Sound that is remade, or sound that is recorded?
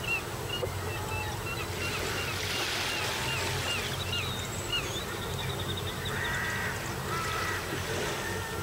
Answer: recorded